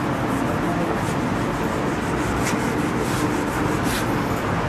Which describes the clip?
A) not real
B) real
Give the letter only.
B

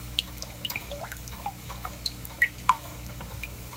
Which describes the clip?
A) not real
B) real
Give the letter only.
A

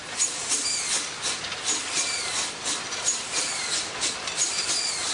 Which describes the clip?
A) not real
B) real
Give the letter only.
B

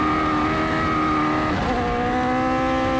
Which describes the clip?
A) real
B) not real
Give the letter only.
A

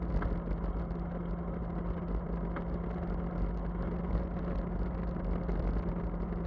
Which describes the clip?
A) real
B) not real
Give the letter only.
A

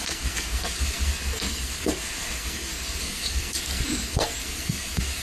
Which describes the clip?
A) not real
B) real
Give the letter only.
A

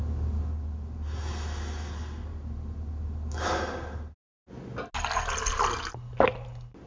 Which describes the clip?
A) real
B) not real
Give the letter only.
A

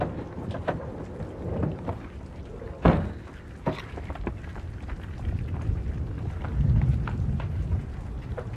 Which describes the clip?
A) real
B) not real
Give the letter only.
A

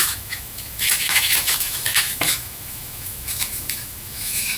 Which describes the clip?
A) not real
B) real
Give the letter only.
A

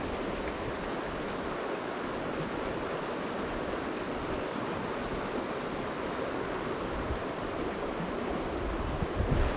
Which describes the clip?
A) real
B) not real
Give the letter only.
A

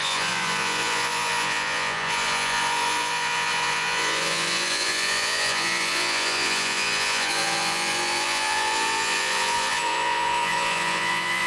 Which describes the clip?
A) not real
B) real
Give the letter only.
A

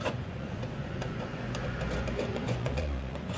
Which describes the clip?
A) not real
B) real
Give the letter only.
A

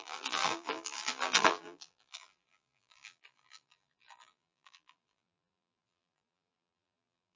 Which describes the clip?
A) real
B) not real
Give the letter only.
B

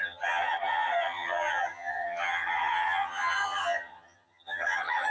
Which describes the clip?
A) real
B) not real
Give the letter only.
B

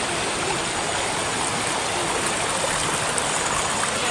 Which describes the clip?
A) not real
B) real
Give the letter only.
B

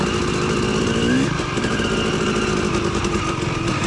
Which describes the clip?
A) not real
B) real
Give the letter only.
B